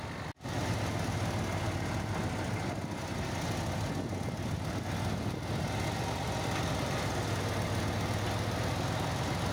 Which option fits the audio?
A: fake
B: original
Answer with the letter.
B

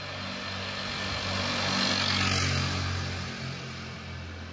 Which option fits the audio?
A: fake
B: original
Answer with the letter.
B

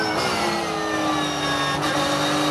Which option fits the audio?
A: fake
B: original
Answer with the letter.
B